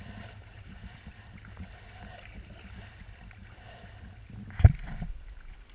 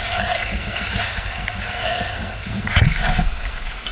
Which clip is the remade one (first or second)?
second